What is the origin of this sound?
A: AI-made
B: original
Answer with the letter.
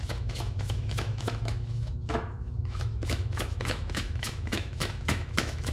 A